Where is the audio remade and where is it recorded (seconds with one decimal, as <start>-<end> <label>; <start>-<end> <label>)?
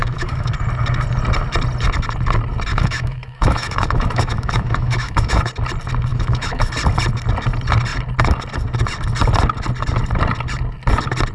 0.0-0.5 remade; 0.5-2.7 recorded; 2.7-5.4 remade; 5.4-6.1 recorded; 6.1-6.7 remade; 6.7-11.3 recorded